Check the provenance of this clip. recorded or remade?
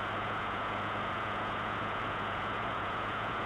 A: remade